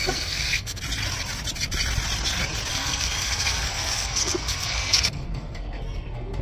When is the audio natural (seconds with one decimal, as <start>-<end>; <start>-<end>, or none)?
0.8-2.7